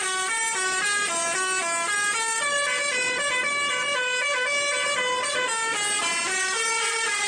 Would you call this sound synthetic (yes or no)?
no